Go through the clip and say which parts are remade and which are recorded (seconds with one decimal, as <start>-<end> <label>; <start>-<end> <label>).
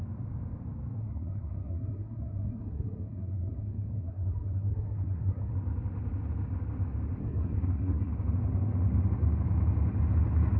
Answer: 0.0-1.0 recorded; 1.0-5.5 remade; 5.5-7.2 recorded; 7.2-8.1 remade; 8.1-10.6 recorded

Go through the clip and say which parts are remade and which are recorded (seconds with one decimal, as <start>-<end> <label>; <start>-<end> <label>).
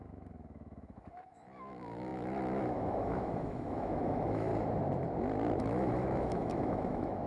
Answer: 0.0-4.5 remade; 4.5-5.6 recorded; 5.6-7.3 remade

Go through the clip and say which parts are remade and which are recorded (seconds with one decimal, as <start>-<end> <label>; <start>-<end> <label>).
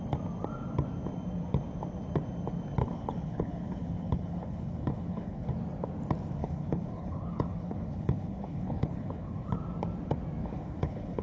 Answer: 0.0-2.8 recorded; 2.8-5.5 remade; 5.5-6.4 recorded; 6.4-9.5 remade; 9.5-10.4 recorded; 10.4-11.2 remade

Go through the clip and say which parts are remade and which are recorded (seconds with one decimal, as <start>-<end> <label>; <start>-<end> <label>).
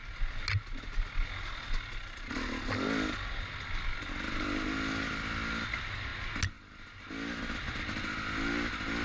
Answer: 0.0-9.0 recorded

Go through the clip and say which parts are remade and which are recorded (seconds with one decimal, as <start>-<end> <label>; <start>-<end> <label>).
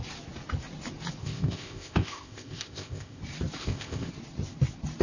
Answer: 0.0-1.2 recorded; 1.2-3.2 remade; 3.2-3.6 recorded; 3.6-4.1 remade; 4.1-5.0 recorded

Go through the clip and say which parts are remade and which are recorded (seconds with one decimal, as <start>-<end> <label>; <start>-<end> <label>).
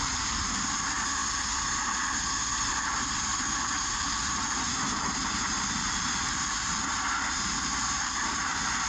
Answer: 0.0-1.2 remade; 1.2-3.2 recorded; 3.2-6.7 remade; 6.7-7.3 recorded; 7.3-8.9 remade